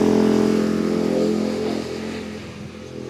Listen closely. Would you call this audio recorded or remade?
recorded